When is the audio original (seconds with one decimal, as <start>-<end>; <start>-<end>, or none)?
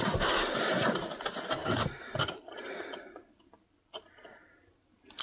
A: 0.0-5.2